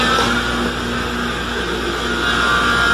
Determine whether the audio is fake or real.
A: real